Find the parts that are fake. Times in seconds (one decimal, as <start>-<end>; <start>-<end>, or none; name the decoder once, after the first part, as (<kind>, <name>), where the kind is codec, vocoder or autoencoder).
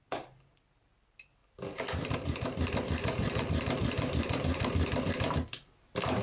1.4-5.1 (vocoder, BigVGAN v2)